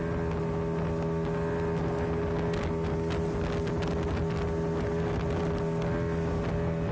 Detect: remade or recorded recorded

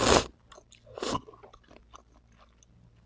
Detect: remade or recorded recorded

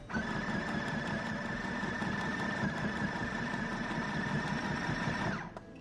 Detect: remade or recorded recorded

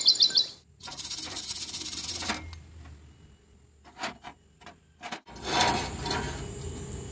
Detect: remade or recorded recorded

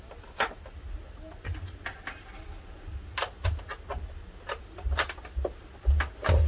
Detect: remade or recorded recorded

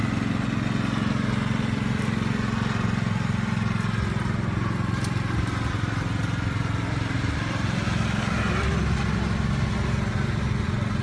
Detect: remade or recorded recorded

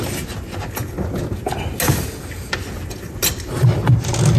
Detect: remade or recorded recorded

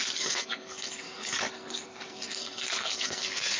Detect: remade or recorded remade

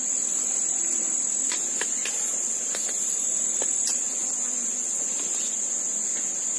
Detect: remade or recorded recorded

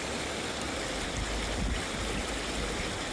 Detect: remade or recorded recorded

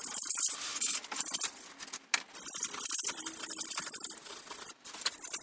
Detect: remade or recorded recorded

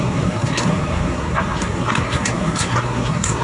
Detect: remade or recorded remade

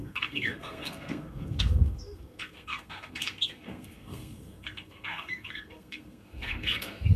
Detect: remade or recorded remade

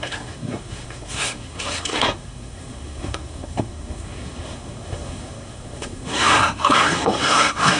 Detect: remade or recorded remade